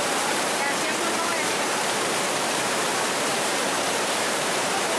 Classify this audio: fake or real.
fake